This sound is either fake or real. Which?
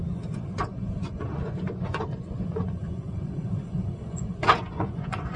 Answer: fake